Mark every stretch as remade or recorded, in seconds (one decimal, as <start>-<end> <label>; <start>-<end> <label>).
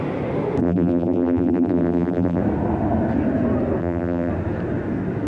0.0-0.6 recorded; 0.6-2.4 remade; 2.4-3.8 recorded; 3.8-4.3 remade; 4.3-5.3 recorded